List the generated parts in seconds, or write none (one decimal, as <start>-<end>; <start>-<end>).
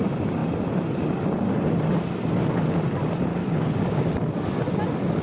3.3-4.1